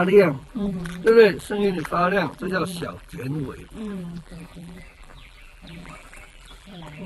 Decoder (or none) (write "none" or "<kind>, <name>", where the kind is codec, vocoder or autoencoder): vocoder, BigVGAN v2